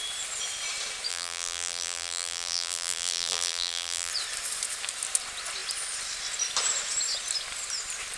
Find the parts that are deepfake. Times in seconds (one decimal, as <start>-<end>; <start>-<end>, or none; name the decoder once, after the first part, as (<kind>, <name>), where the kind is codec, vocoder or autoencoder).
1.1-4.1 (vocoder, BigVGAN v2)